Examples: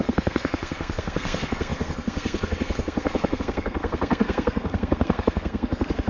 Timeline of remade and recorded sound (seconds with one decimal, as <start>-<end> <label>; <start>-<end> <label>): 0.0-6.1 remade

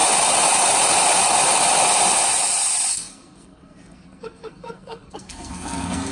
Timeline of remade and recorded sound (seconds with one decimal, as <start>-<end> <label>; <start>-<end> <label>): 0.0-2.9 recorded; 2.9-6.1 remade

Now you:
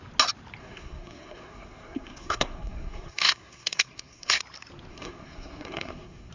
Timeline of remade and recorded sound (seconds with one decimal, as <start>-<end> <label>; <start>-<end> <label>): 0.0-0.6 recorded; 0.6-4.4 remade; 4.4-4.9 recorded; 4.9-6.3 remade

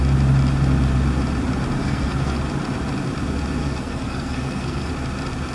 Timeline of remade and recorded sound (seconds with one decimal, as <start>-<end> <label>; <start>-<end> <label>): 0.0-1.8 recorded; 1.8-2.4 remade; 2.4-3.6 recorded; 3.6-4.9 remade; 4.9-5.5 recorded

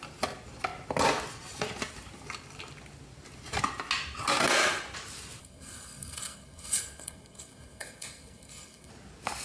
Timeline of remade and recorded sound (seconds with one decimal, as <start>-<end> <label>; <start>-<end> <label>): 0.0-5.4 recorded; 5.4-8.9 remade; 8.9-9.4 recorded

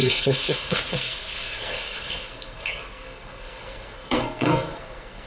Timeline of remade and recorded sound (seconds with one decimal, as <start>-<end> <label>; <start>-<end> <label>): 0.0-5.3 remade